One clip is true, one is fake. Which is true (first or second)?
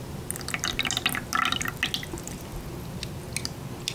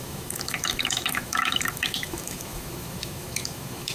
first